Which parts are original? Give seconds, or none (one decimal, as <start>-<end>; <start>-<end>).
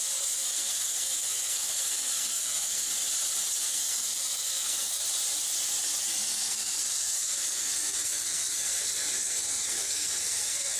2.9-3.6; 5.0-6.0